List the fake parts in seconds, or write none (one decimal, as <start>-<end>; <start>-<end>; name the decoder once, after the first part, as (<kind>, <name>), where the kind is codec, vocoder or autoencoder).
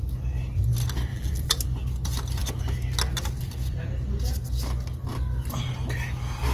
1.1-1.6 (vocoder, BigVGAN v2)